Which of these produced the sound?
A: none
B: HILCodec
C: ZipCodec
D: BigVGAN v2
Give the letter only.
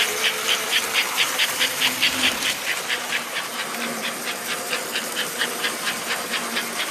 D